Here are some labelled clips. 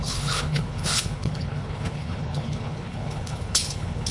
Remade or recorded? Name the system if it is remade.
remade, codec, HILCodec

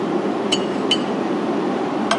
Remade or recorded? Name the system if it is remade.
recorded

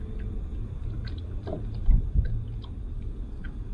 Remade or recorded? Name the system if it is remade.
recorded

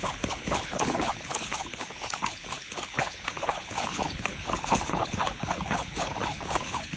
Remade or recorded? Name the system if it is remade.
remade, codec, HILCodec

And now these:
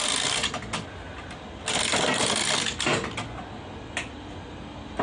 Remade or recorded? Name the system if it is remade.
recorded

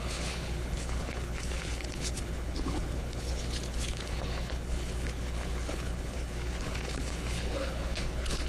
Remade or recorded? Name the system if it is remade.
remade, codec, HILCodec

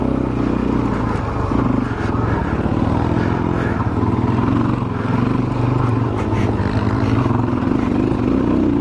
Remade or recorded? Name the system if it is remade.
recorded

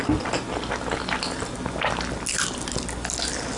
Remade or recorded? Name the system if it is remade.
recorded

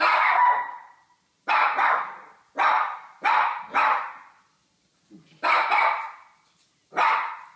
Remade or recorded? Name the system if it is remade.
recorded